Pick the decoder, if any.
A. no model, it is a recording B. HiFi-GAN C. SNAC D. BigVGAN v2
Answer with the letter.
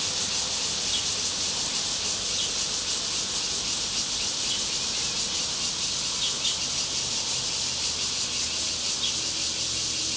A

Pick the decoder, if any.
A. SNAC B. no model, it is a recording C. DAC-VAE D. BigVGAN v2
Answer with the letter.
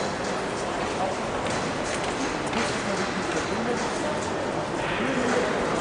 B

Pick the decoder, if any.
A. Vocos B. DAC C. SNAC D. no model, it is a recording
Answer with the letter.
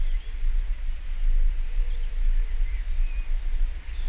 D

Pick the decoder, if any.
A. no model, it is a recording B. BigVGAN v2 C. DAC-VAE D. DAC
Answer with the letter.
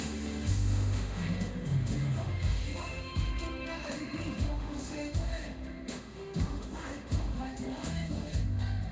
C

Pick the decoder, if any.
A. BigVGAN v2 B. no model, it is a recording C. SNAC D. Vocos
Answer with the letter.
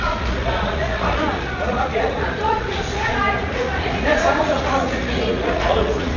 D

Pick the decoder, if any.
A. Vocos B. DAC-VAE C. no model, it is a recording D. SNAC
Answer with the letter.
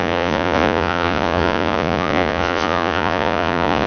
A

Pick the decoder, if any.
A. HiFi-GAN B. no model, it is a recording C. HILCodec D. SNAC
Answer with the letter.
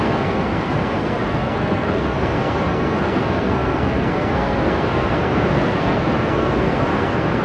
D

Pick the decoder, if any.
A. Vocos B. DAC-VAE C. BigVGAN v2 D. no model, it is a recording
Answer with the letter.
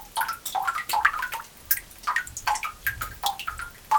D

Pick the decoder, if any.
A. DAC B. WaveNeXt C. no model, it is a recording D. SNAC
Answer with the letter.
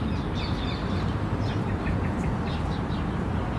C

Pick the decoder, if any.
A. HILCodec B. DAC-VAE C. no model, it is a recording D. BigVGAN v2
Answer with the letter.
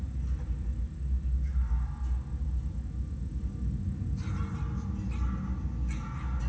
C